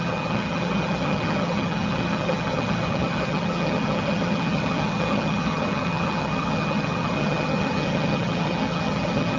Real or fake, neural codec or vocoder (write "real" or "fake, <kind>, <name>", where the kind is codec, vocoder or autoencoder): fake, vocoder, HiFi-GAN